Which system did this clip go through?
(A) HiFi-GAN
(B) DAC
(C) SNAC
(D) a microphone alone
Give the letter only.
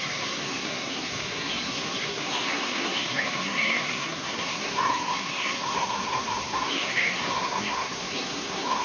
C